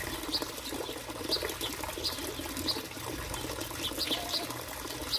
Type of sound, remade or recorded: recorded